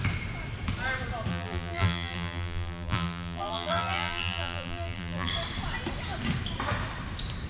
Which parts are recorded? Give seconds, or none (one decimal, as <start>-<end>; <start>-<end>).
0.0-1.3; 5.3-7.5